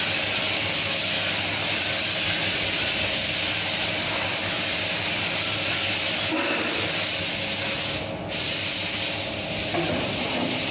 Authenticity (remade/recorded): recorded